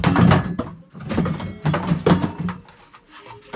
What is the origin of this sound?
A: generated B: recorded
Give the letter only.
B